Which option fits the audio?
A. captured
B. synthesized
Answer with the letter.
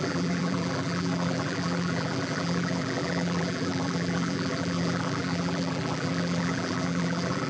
B